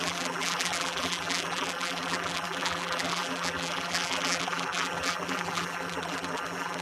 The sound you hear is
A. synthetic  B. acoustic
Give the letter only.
A